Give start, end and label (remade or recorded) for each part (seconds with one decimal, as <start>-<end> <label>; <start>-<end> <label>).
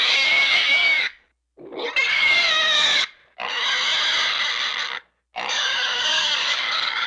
0.0-1.3 remade; 1.3-2.1 recorded; 2.1-3.2 remade; 3.2-5.5 recorded; 5.5-7.1 remade